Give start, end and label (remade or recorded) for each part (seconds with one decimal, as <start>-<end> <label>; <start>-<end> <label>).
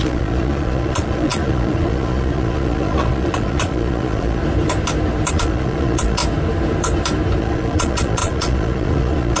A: 0.0-4.4 remade; 4.4-5.3 recorded; 5.3-6.2 remade; 6.2-7.4 recorded; 7.4-9.4 remade